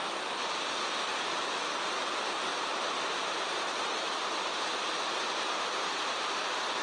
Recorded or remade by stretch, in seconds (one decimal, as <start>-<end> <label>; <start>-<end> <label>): 0.0-2.5 recorded; 2.5-3.6 remade; 3.6-6.8 recorded